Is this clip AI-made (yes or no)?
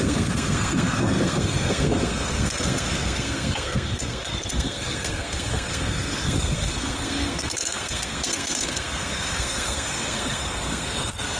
yes